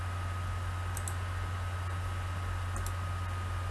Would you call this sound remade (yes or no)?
no